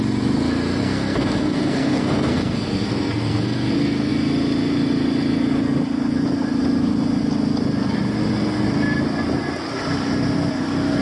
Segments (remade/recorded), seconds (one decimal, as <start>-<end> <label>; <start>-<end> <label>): 0.0-0.8 recorded; 0.8-4.1 remade; 4.1-11.0 recorded